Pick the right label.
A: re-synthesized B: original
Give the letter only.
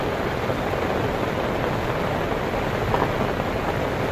B